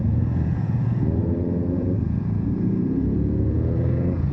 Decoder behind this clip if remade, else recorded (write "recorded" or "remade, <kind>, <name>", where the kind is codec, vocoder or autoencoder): remade, vocoder, Vocos